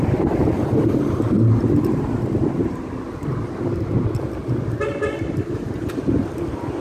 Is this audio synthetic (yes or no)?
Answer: no